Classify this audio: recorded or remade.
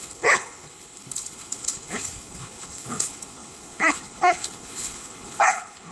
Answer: remade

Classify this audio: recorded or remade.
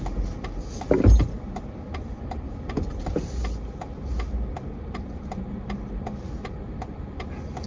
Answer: recorded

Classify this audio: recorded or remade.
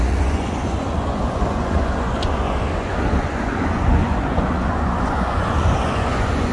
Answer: remade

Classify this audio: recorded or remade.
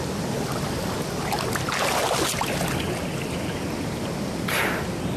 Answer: recorded